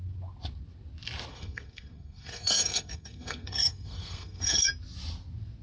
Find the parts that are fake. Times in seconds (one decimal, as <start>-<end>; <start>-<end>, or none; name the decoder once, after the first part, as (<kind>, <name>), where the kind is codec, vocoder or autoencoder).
1.3-4.7 (codec, SNAC)